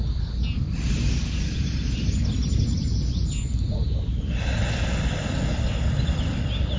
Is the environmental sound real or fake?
real